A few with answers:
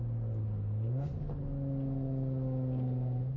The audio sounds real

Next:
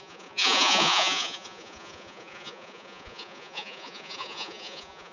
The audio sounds fake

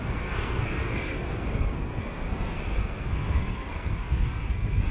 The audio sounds fake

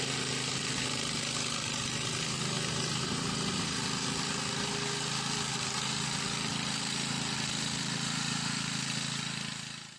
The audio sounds real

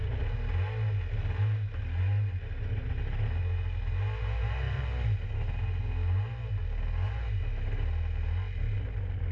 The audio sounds real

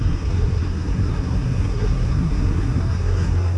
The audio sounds fake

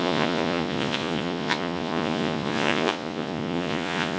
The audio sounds fake